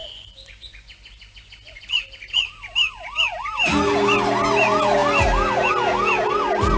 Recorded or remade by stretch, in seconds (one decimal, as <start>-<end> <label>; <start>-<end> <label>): 0.0-2.5 remade; 2.5-6.8 recorded